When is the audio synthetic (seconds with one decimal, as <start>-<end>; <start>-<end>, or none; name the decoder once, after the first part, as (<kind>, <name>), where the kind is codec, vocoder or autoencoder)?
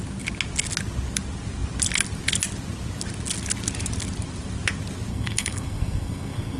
5.1-6.6 (codec, SNAC)